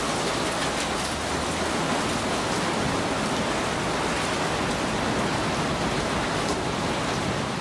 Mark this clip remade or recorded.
recorded